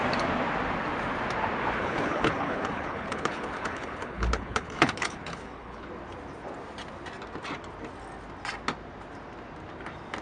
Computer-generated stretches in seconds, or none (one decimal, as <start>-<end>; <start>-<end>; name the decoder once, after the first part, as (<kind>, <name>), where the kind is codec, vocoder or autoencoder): 1.8-5.9 (codec, HILCodec)

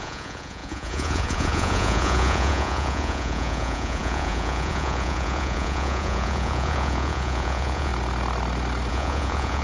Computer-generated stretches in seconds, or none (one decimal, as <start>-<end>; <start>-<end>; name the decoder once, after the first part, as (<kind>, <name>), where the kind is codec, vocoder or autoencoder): 0.0-7.9 (vocoder, Vocos); 8.9-9.6

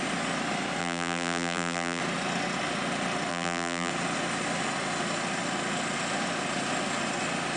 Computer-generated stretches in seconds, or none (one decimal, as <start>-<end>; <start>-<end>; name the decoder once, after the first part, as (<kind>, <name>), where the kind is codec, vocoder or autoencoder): 0.8-2.0 (vocoder, BigVGAN v2); 3.3-3.9

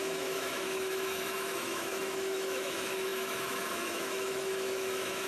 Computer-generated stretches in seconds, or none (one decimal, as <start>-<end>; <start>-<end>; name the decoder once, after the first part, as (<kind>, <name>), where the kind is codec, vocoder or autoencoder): 0.0-5.3 (autoencoder, DAC-VAE)